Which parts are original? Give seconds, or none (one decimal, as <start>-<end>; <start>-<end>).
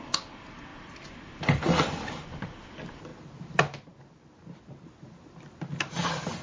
0.0-0.7; 2.5-3.1; 4.0-6.4